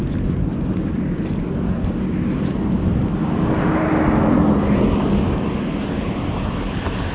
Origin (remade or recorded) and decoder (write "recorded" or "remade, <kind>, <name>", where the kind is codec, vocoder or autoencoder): recorded